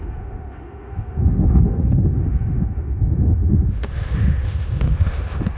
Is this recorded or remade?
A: remade